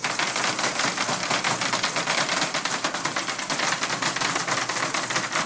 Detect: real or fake real